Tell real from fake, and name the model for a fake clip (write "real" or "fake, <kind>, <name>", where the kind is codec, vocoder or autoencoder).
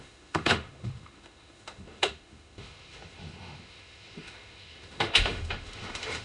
fake, autoencoder, DAC-VAE